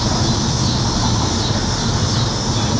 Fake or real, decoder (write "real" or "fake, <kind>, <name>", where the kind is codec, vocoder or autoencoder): real